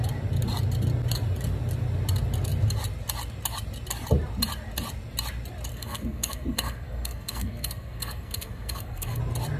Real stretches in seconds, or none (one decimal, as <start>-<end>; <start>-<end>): 0.0-5.7; 9.2-9.6